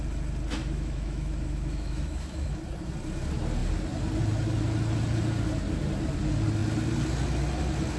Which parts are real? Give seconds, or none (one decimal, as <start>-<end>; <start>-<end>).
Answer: 0.0-0.6; 2.6-8.0